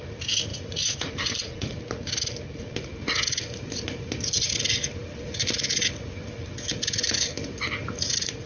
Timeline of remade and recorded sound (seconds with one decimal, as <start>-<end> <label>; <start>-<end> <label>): 0.0-0.5 recorded; 0.5-1.7 remade; 1.7-8.5 recorded